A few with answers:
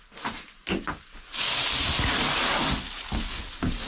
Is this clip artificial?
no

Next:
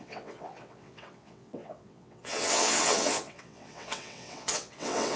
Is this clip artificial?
yes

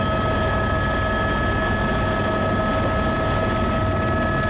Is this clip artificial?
no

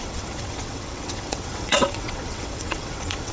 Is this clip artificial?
yes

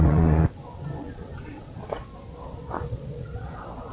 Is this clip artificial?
yes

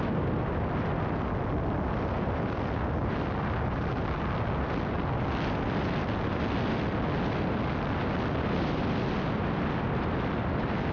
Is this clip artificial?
no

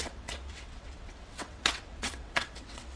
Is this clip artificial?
yes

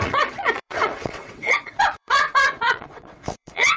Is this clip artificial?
yes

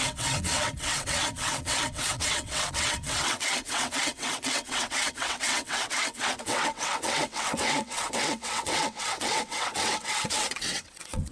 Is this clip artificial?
yes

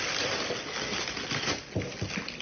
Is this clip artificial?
no